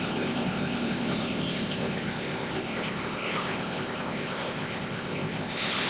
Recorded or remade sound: remade